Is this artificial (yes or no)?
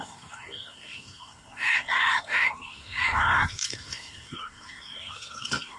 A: yes